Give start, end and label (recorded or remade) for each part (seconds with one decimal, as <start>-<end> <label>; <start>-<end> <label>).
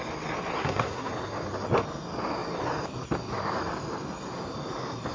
0.0-0.6 recorded; 0.6-1.1 remade; 1.1-5.1 recorded